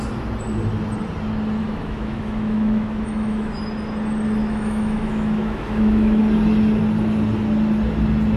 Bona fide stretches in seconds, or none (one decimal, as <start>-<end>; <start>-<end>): 0.0-1.6; 3.6-4.4; 6.2-8.4